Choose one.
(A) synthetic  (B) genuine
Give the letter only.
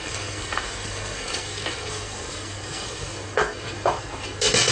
A